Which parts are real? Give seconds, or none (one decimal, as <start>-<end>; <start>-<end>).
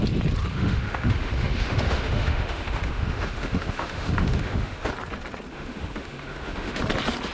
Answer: 0.0-0.5; 4.9-5.5; 6.8-7.3